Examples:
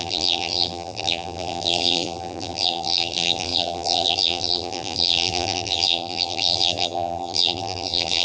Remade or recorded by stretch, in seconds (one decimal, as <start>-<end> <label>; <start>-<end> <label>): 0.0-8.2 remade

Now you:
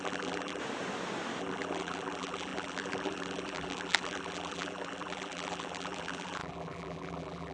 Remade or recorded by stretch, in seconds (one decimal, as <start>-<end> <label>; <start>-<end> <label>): 0.0-0.6 remade; 0.6-1.4 recorded; 1.4-7.5 remade

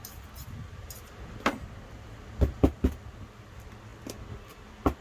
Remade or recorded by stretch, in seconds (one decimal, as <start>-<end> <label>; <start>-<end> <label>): 0.0-5.0 recorded

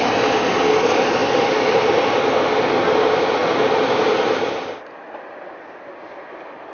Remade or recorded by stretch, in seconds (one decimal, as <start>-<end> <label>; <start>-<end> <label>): 0.0-6.7 recorded

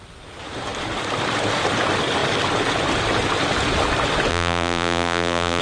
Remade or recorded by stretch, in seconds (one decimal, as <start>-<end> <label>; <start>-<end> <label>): 0.0-4.3 recorded; 4.3-5.6 remade